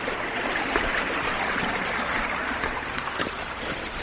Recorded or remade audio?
recorded